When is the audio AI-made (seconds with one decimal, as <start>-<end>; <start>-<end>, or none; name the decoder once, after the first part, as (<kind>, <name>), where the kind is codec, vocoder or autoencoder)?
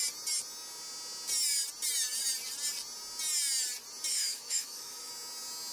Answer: 4.1-5.1 (autoencoder, DAC-VAE)